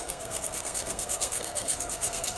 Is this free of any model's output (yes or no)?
no